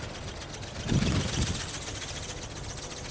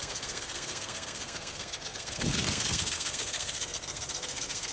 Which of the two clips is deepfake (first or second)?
second